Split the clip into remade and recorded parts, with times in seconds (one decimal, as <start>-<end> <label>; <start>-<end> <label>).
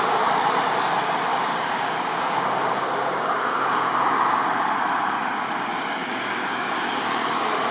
0.0-1.3 recorded; 1.3-4.4 remade; 4.4-6.0 recorded; 6.0-7.0 remade; 7.0-7.7 recorded